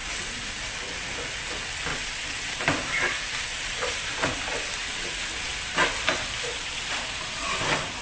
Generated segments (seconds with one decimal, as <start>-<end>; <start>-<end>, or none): 1.9-2.6; 3.5-4.4; 6.5-7.4